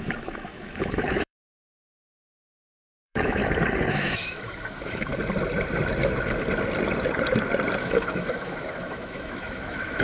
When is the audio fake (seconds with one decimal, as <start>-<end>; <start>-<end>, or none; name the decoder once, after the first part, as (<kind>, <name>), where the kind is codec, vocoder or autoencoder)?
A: 0.0-3.4 (autoencoder, DAC-VAE); 3.9-5.1; 7.8-10.0